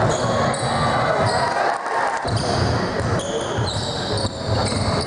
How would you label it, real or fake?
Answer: real